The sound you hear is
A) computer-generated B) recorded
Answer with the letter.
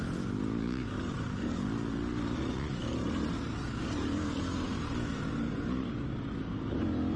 B